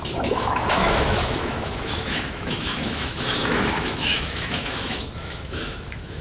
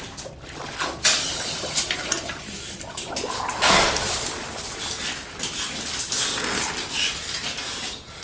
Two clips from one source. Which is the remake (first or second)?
first